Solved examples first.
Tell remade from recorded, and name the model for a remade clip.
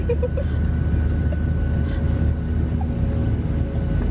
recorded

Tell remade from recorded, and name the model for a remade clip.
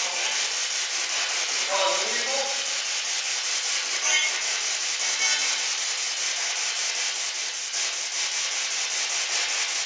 recorded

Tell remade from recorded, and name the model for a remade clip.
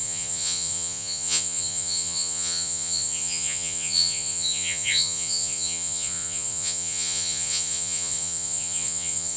remade, vocoder, Vocos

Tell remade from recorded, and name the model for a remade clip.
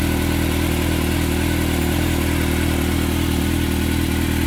recorded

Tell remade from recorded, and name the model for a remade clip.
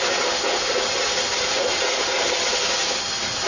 remade, vocoder, BigVGAN v2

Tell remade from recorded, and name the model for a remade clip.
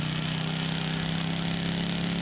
recorded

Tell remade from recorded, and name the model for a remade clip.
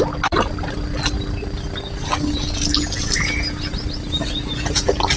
recorded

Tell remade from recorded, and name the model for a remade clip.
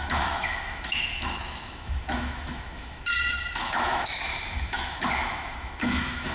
remade, autoencoder, DAC-VAE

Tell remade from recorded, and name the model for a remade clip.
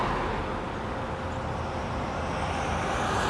recorded